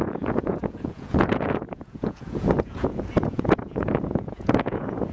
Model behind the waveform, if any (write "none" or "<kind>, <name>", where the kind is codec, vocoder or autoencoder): vocoder, Vocos